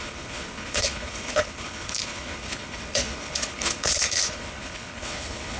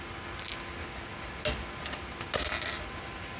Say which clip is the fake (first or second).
first